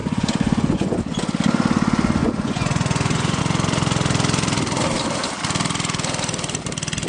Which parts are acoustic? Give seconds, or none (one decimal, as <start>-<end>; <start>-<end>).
1.0-2.2; 3.4-7.1